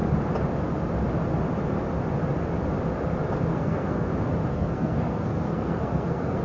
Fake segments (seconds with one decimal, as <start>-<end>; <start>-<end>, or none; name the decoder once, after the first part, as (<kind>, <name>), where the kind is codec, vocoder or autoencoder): 3.5-4.1 (codec, SNAC); 4.5-6.4